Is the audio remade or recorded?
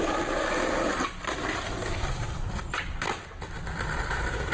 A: remade